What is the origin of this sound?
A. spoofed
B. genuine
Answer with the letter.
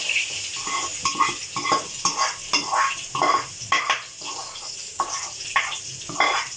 B